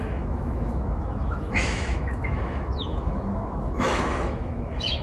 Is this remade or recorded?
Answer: remade